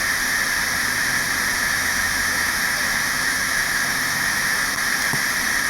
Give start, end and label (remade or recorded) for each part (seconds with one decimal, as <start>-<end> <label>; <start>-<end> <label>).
0.0-1.5 recorded; 1.5-4.8 remade; 4.8-5.7 recorded